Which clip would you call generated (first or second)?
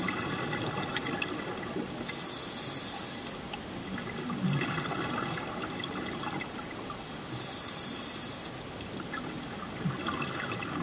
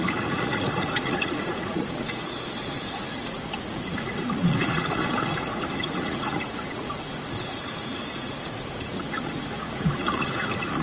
second